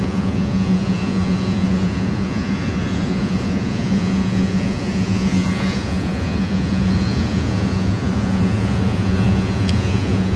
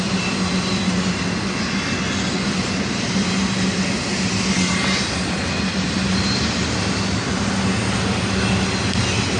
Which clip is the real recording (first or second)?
second